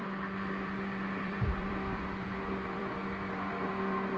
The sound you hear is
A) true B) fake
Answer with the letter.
B